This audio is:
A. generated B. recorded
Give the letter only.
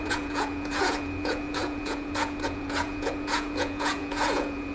A